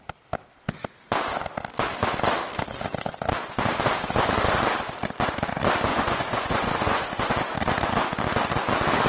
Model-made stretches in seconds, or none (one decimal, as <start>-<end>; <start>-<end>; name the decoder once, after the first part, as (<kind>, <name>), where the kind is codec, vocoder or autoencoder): 5.9-7.3 (vocoder, Vocos)